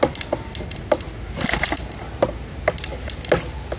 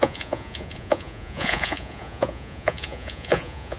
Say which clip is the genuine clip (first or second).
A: first